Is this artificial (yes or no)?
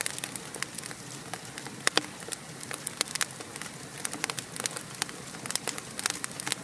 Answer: no